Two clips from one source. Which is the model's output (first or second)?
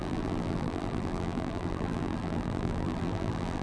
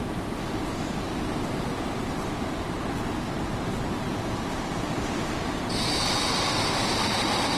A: first